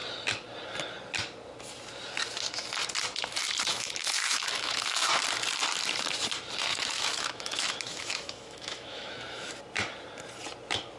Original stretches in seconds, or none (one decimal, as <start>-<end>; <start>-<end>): 0.0-3.7; 5.1-6.7; 9.6-11.0